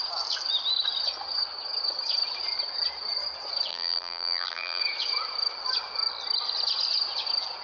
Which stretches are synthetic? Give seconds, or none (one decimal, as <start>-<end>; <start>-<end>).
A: 3.7-4.8